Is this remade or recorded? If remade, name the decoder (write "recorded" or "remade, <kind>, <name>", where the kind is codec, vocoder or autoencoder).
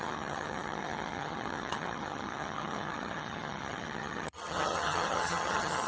remade, vocoder, HiFi-GAN